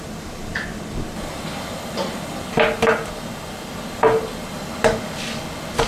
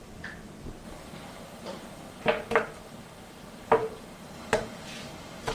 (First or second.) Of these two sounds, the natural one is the first